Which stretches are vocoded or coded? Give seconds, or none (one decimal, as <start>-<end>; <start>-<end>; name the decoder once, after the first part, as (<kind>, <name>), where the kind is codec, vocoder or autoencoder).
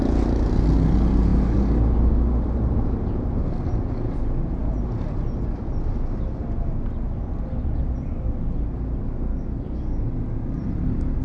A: 9.3-10.0 (codec, DAC)